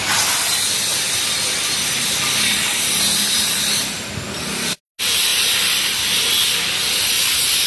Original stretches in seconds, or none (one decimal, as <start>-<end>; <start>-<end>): 0.0-0.9; 2.8-7.7